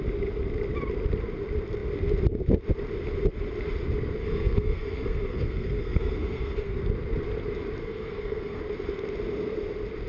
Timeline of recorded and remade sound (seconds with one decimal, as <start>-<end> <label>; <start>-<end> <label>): 0.0-4.2 recorded; 4.2-6.8 remade; 6.8-7.8 recorded; 7.8-8.6 remade; 8.6-10.1 recorded